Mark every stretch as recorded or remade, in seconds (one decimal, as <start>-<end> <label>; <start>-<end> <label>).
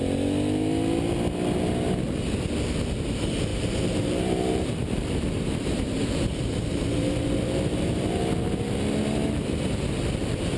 0.0-3.5 recorded; 3.5-8.2 remade; 8.2-10.6 recorded